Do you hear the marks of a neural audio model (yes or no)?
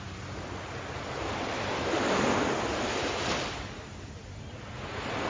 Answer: no